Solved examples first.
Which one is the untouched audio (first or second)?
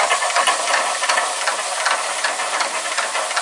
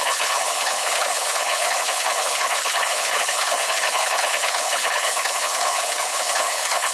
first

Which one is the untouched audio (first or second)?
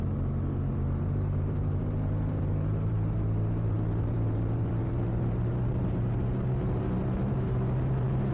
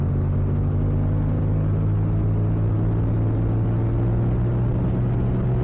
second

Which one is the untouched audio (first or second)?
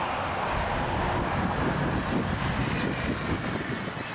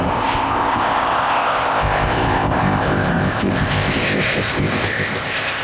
first